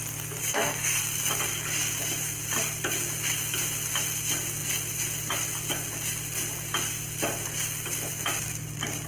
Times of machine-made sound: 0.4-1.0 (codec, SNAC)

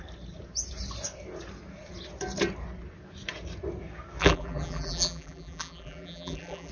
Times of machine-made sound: 4.2-6.7 (vocoder, BigVGAN v2)

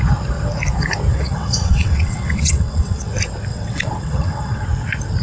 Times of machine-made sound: 1.1-3.1 (vocoder, WaveNeXt); 3.5-4.6

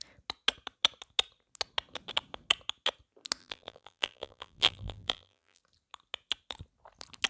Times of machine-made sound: 3.4-5.6 (vocoder, BigVGAN v2)

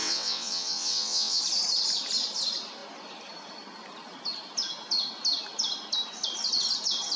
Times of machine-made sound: 0.0-1.4 (vocoder, WaveNeXt)

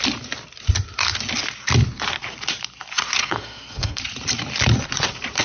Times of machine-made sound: 3.2-4.0 (codec, SNAC)

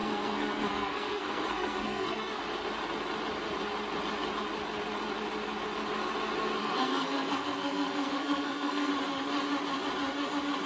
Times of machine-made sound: 0.0-2.4 (codec, SNAC); 6.6-8.9